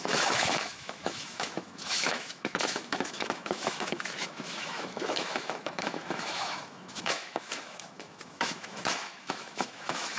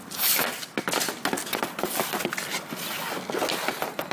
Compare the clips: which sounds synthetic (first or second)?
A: first